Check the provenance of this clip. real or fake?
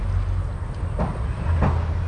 real